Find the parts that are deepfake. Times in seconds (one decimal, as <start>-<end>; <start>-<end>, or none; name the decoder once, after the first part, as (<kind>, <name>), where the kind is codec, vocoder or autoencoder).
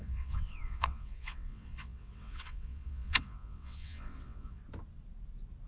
0.0-4.6 (vocoder, WaveNeXt)